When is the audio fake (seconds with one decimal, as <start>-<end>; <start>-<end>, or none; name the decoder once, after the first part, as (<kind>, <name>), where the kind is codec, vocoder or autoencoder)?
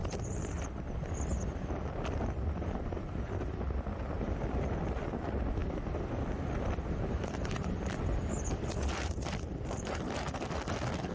none